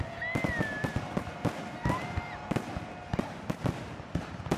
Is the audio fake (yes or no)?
no